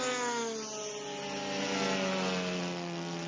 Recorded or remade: recorded